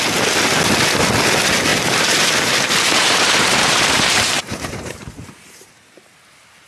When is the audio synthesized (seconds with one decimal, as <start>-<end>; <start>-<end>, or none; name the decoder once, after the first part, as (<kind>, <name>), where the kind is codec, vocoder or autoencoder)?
1.7-5.7 (vocoder, BigVGAN v2)